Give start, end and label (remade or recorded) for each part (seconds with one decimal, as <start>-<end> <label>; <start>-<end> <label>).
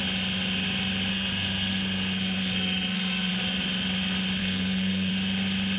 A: 0.0-1.1 recorded; 1.1-3.3 remade; 3.3-4.4 recorded; 4.4-5.1 remade; 5.1-5.8 recorded